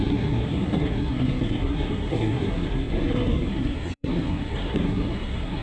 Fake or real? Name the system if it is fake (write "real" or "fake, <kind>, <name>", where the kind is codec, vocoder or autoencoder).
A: fake, codec, SNAC